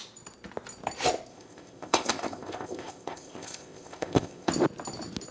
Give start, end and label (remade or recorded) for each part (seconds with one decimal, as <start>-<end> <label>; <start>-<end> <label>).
0.0-1.3 recorded; 1.3-4.5 remade; 4.5-5.3 recorded